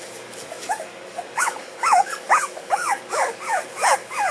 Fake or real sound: fake